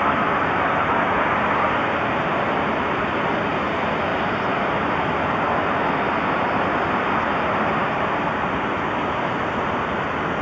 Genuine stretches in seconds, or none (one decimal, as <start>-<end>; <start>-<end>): 0.0-10.4